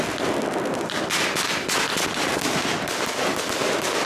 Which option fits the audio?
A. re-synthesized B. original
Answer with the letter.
B